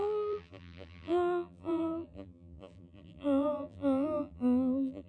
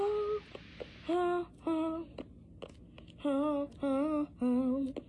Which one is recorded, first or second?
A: second